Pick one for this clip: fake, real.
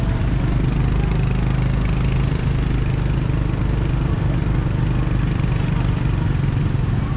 real